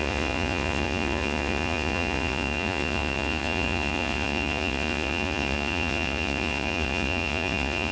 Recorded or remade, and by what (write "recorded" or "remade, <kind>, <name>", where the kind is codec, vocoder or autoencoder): remade, vocoder, Vocos